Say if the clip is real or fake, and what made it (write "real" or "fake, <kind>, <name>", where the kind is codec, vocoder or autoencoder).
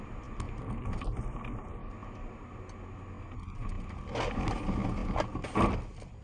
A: real